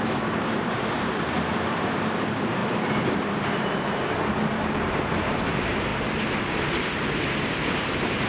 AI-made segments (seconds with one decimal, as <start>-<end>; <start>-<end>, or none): 0.0-2.6; 3.3-5.9; 7.7-8.3